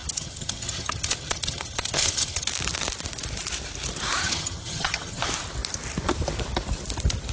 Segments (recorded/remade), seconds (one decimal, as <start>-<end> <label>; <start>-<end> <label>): 0.0-2.5 remade; 2.5-4.2 recorded; 4.2-5.2 remade; 5.2-7.3 recorded